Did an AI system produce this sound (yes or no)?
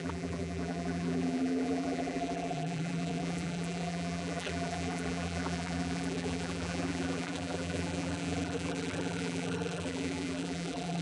yes